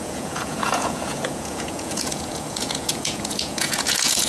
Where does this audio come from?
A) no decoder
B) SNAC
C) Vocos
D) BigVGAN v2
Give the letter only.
C